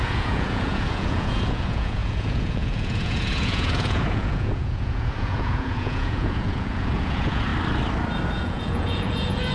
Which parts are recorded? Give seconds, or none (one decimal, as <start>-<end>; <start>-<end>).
7.5-8.3